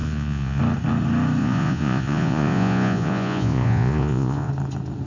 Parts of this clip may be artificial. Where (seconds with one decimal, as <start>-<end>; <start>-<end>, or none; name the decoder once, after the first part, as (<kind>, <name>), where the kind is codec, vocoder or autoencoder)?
0.0-0.6 (vocoder, Vocos); 1.4-4.5